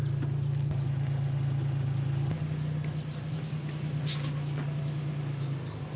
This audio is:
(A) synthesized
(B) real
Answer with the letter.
B